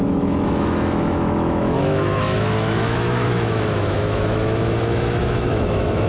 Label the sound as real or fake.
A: fake